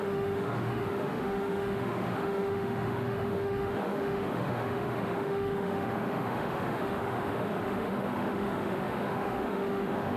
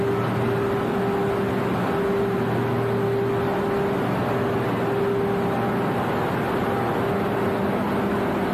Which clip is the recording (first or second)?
second